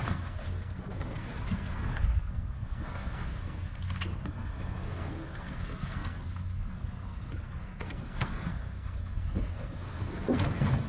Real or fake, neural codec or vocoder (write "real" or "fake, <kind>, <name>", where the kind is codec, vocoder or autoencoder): fake, codec, SNAC